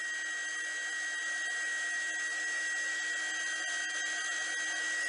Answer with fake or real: real